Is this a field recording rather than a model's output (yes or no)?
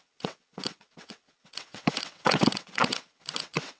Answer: no